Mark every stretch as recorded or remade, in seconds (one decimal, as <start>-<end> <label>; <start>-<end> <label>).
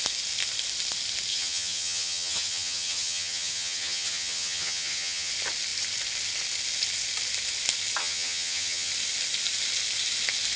0.0-1.3 recorded; 1.3-5.3 remade; 5.3-8.0 recorded; 8.0-8.9 remade; 8.9-10.6 recorded